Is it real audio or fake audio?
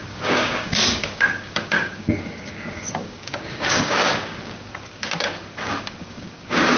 fake